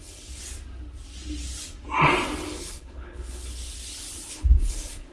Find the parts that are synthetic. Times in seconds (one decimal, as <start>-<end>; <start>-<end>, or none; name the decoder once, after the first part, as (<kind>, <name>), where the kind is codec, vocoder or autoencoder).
0.0-0.4 (codec, HILCodec); 2.6-3.6; 4.3-5.1